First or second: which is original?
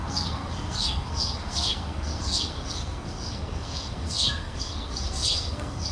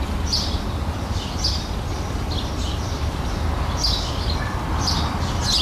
second